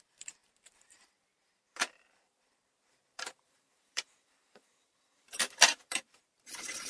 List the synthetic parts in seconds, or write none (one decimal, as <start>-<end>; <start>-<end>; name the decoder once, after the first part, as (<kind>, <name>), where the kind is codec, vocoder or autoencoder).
0.0-6.9 (vocoder, BigVGAN v2)